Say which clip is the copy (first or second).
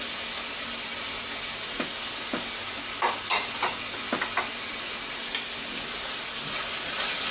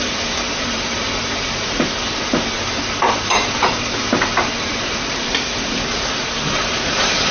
second